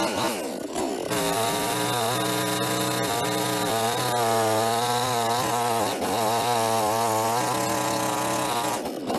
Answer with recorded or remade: recorded